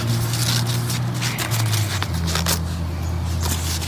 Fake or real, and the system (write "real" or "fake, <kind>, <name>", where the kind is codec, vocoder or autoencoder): real